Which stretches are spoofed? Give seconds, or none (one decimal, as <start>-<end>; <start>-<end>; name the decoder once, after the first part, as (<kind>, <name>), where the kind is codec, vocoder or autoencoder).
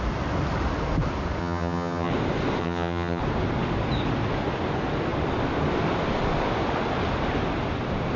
1.4-2.1 (vocoder, HiFi-GAN); 2.6-3.2